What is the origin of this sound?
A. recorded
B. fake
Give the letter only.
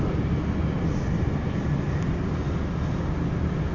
A